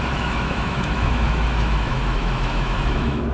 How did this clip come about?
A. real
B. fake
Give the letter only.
B